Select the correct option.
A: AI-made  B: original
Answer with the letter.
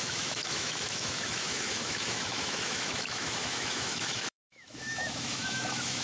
A